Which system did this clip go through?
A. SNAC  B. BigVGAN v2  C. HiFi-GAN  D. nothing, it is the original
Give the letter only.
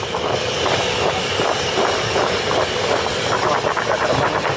D